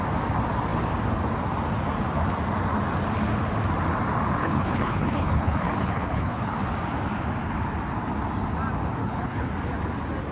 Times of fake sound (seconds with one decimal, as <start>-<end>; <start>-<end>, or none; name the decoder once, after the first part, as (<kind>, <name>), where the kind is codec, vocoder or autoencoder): 4.4-6.6 (codec, HILCodec); 9.0-9.5